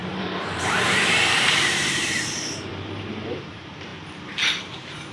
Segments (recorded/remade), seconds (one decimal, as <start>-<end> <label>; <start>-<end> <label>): 0.0-5.1 remade